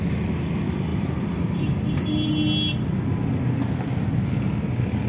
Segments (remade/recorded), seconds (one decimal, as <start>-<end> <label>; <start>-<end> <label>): 0.0-5.1 recorded